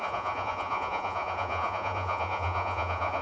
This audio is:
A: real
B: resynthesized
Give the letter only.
B